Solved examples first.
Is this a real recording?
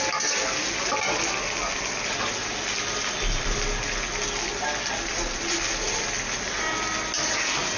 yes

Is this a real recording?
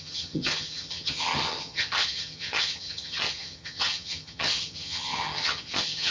no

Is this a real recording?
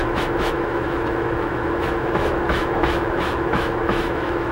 no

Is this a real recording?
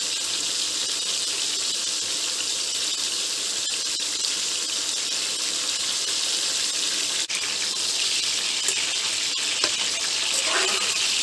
yes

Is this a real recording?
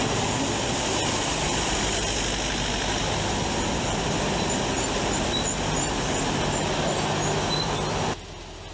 yes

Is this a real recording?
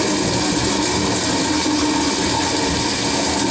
yes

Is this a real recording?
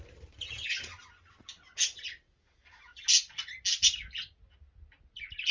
yes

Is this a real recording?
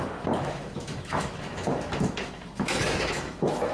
no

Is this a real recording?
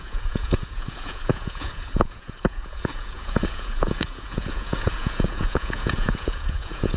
no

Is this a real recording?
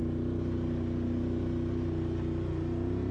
yes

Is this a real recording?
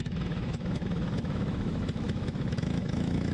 no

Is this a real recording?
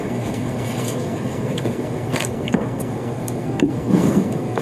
no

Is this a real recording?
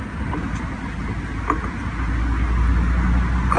yes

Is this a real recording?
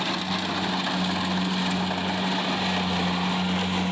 yes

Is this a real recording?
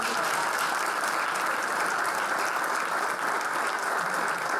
yes